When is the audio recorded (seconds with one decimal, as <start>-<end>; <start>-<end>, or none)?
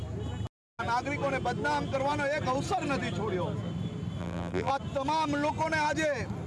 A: 0.0-4.2; 4.7-6.5